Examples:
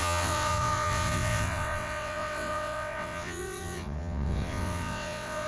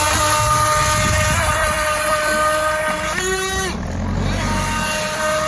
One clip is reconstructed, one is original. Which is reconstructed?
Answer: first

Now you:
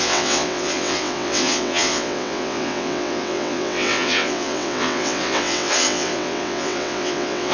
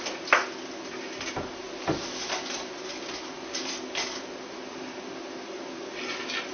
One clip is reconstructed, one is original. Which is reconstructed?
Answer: first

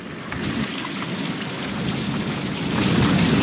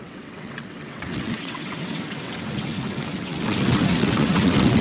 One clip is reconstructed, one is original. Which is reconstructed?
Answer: second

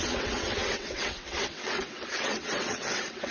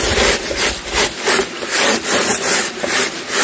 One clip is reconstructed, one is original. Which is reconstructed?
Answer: first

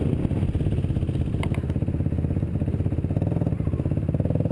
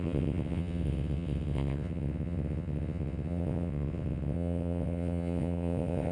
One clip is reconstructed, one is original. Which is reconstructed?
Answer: second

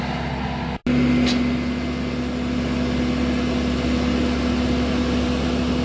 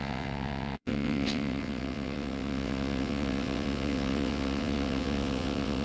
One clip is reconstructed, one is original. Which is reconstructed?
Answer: second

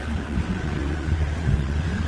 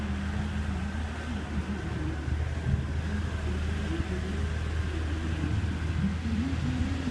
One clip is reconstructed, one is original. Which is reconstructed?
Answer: first